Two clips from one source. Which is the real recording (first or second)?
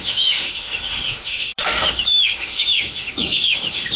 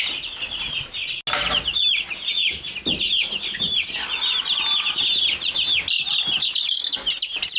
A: second